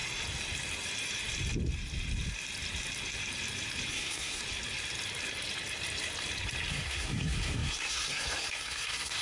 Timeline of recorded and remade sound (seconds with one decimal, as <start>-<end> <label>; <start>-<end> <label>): 0.0-3.9 recorded; 3.9-4.4 remade; 4.4-6.7 recorded; 6.7-9.2 remade